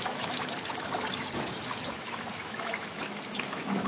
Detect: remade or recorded remade